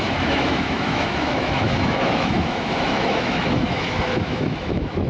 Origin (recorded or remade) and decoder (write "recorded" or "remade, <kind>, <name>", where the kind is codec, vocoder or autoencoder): remade, autoencoder, DAC-VAE